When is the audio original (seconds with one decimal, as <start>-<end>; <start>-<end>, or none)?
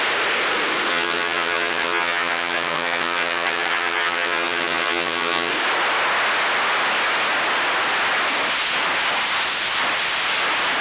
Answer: 0.0-0.9; 5.5-10.8